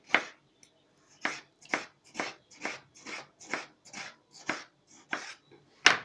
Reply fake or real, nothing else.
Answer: real